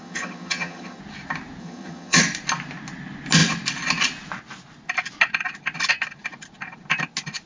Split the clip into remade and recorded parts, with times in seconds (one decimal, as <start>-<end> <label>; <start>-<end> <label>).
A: 0.0-1.0 remade; 1.0-1.6 recorded; 1.6-2.2 remade; 2.2-7.5 recorded